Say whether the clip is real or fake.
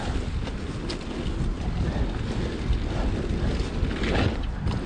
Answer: real